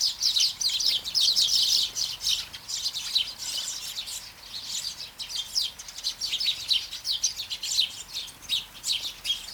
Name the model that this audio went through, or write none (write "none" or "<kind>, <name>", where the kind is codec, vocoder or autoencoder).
none